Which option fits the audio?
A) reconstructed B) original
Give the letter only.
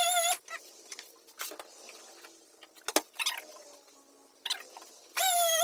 B